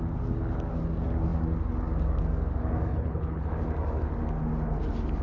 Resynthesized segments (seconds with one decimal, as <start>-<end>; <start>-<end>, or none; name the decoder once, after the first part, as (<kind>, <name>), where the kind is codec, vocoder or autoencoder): 2.9-3.5 (codec, HILCodec)